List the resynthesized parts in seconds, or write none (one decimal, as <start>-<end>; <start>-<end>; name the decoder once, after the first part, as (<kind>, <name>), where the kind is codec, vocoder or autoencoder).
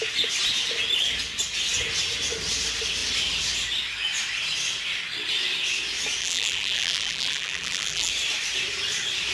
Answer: 6.2-8.1 (vocoder, BigVGAN v2)